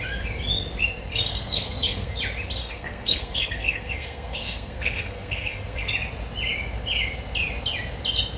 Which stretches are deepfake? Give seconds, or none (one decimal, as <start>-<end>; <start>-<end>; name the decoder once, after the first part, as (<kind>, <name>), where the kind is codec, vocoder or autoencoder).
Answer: 1.1-2.2 (codec, SNAC); 2.6-5.9